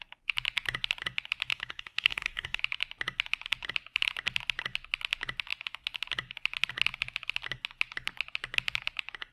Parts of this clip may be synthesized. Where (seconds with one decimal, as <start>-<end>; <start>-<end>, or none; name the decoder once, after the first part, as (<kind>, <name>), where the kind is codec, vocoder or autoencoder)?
1.5-2.6 (codec, DAC)